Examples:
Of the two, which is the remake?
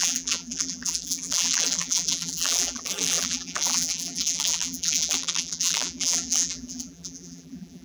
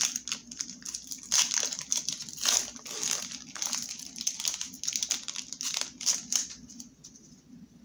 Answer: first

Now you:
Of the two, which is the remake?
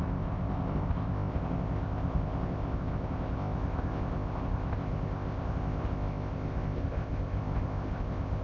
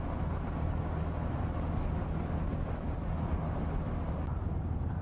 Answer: first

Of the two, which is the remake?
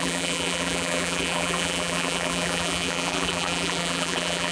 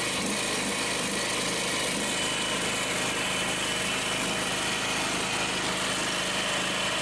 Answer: first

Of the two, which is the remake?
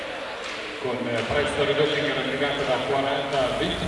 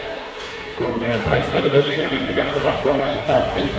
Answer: second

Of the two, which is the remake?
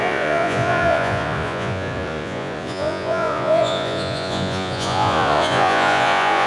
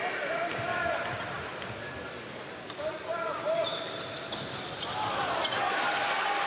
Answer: first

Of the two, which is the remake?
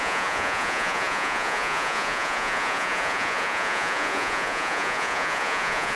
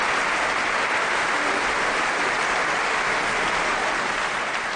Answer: first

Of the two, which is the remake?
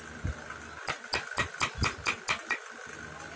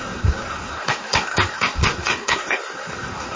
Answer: second